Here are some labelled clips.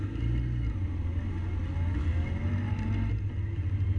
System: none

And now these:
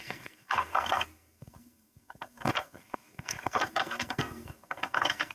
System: codec, SNAC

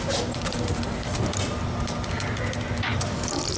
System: none